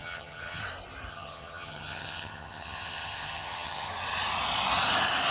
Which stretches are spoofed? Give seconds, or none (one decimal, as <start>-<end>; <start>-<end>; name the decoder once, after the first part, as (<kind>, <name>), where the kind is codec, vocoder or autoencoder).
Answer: 0.0-0.6 (vocoder, HiFi-GAN); 1.1-3.9

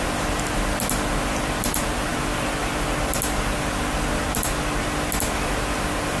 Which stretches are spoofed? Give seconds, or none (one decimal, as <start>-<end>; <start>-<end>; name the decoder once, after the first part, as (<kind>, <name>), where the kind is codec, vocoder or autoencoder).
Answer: none

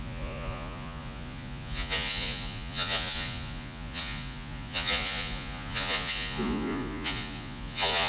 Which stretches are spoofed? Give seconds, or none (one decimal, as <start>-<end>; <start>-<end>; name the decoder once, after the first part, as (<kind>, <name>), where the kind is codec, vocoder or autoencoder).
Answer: 0.0-8.1 (vocoder, Vocos)